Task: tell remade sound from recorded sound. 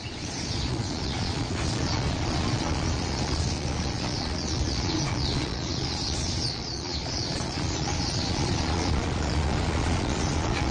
remade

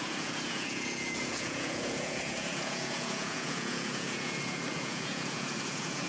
remade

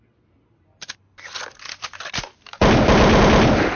recorded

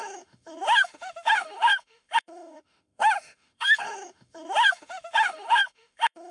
remade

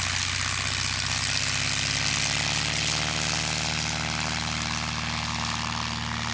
recorded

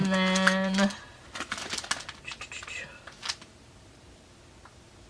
recorded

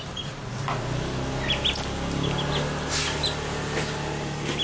recorded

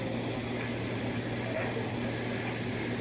recorded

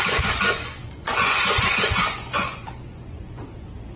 remade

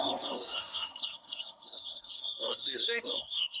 remade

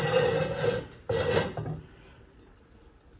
recorded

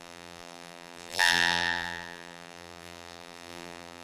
remade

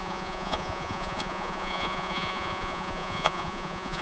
remade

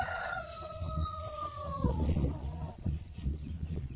remade